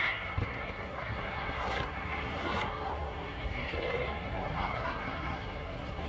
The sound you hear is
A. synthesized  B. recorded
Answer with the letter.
A